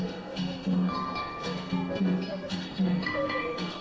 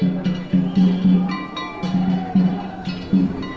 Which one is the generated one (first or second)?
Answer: first